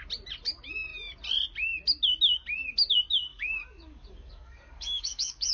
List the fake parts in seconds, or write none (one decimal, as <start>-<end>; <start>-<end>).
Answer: 3.3-5.5